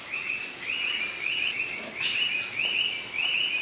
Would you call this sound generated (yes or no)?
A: no